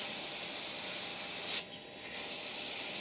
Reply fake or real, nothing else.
real